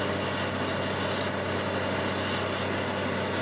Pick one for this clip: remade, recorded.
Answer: recorded